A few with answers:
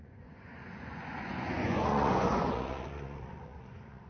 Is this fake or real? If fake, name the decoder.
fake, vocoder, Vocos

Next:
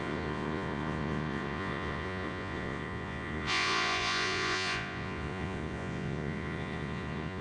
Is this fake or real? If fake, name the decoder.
fake, vocoder, Vocos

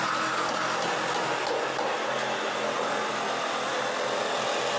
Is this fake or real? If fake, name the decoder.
real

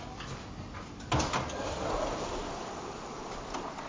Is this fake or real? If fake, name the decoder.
real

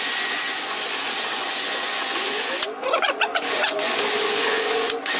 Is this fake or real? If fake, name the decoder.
fake, vocoder, Vocos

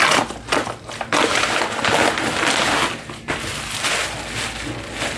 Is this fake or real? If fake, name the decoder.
real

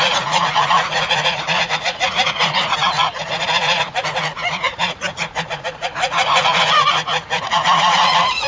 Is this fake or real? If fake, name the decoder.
fake, vocoder, Vocos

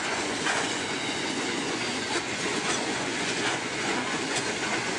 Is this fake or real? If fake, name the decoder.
fake, vocoder, Vocos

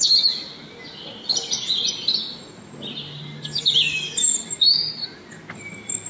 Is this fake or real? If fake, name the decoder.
real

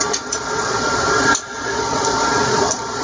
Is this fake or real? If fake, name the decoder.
fake, vocoder, Vocos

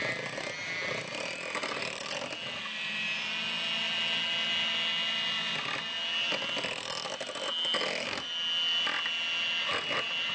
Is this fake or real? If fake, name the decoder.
real